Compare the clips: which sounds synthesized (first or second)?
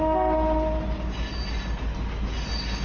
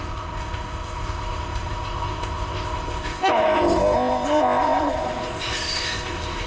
second